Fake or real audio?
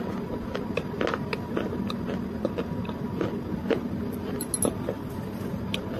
real